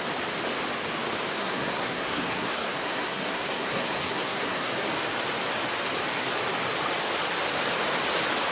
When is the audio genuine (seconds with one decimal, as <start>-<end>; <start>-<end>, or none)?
0.0-1.4; 4.7-8.5